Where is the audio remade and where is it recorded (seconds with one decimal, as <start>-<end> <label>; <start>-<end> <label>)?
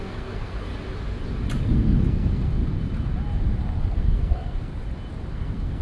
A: 0.0-0.7 remade; 0.7-1.6 recorded; 1.6-2.6 remade; 2.6-3.8 recorded; 3.8-4.7 remade; 4.7-5.3 recorded; 5.3-5.8 remade